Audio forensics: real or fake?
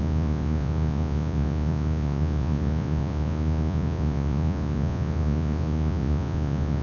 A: fake